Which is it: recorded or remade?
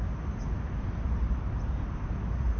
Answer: recorded